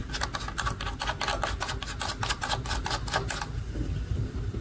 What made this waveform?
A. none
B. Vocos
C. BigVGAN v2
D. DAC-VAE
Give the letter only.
A